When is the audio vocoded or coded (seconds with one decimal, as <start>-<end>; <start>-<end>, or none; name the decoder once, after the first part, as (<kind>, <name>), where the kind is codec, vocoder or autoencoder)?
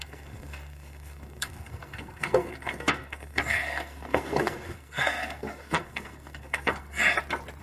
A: 0.0-7.0 (codec, SNAC)